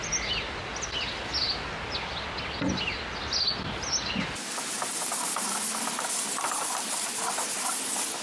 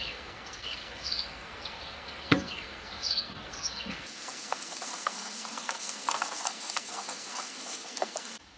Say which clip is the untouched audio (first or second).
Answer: first